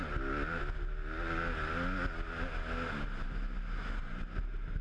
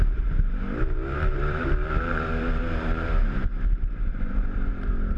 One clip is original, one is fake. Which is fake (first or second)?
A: second